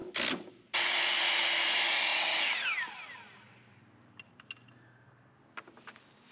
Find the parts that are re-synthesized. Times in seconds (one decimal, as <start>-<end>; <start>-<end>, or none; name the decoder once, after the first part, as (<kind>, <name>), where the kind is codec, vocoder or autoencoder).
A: 0.5-2.1 (vocoder, BigVGAN v2)